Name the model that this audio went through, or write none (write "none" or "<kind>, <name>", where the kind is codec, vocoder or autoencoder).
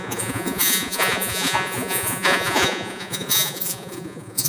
vocoder, Vocos